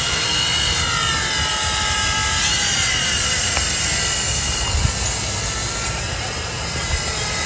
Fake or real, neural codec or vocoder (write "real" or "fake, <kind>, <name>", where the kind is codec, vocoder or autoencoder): real